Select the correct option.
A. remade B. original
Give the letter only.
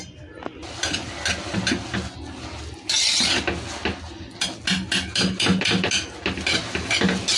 B